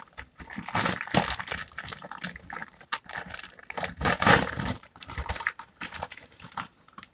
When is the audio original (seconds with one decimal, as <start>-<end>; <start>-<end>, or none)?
0.0-2.6